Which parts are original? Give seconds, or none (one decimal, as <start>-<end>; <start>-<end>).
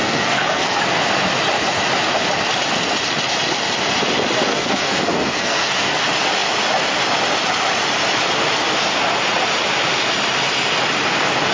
0.8-4.5; 6.0-11.5